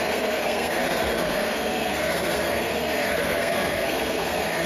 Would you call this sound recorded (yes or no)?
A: no